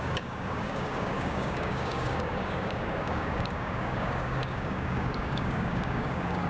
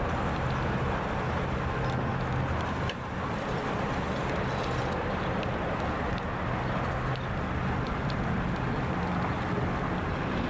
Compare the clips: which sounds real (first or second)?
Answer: second